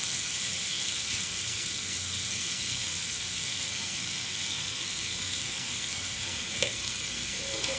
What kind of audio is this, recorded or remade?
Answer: remade